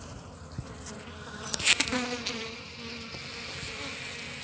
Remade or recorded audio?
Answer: recorded